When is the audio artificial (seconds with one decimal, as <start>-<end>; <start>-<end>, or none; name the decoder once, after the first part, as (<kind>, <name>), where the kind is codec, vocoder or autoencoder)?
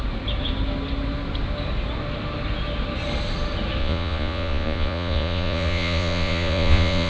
3.8-7.1 (vocoder, Vocos)